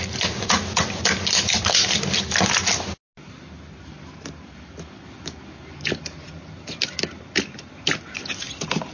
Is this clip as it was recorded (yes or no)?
yes